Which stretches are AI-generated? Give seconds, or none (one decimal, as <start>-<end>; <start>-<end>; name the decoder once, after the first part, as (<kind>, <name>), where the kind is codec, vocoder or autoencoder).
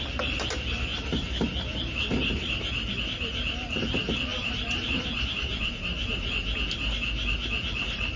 4.3-5.7 (vocoder, BigVGAN v2)